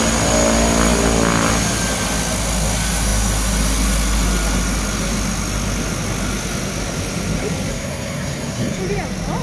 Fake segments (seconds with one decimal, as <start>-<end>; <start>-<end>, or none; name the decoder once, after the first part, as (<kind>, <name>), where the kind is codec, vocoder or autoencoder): 7.7-8.8 (codec, SNAC)